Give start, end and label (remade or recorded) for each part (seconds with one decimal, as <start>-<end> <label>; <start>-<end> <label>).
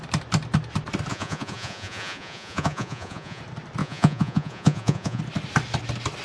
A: 0.0-1.1 recorded; 1.1-3.4 remade; 3.4-3.8 recorded; 3.8-5.2 remade; 5.2-6.2 recorded